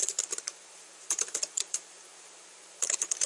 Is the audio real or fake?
fake